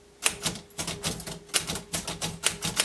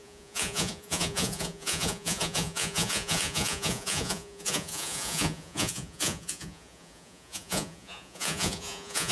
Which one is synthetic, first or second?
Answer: second